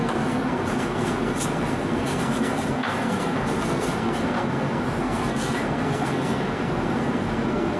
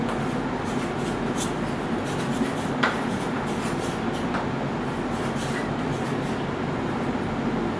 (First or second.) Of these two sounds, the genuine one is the second